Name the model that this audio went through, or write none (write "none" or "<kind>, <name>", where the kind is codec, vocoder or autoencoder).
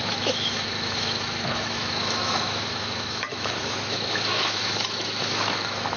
autoencoder, DAC-VAE